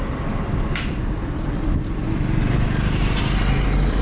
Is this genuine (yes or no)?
yes